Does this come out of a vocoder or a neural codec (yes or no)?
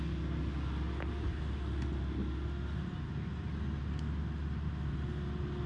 no